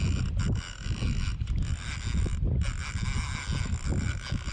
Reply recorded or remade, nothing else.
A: recorded